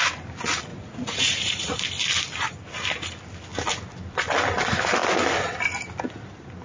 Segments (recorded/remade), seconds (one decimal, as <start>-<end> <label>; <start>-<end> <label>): 0.0-0.7 recorded; 0.7-1.8 remade; 1.8-6.6 recorded